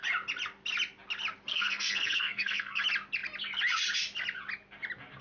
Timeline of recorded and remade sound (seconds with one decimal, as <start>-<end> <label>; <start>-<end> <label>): 0.0-1.5 recorded; 1.5-2.8 remade; 2.8-5.2 recorded